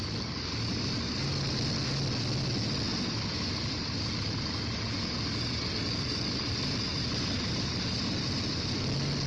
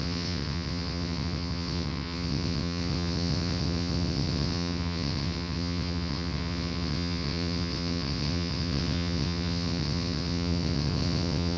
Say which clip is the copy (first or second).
second